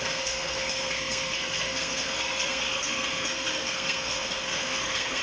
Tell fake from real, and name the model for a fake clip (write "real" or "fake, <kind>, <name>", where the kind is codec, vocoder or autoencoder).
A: fake, codec, SNAC